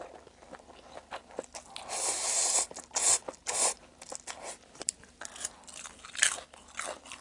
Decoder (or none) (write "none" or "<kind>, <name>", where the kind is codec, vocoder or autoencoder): none